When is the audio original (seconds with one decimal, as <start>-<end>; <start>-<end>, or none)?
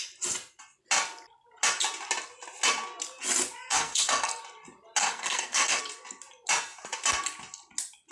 0.0-3.7; 4.4-5.0; 5.8-8.1